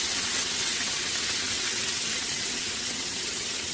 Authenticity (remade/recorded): remade